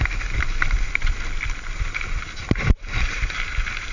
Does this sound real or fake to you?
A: real